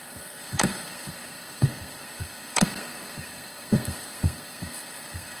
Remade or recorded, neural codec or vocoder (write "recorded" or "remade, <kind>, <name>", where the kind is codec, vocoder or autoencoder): remade, codec, SNAC